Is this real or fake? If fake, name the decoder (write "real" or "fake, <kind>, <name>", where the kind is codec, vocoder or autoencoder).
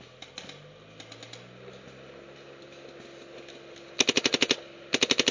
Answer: real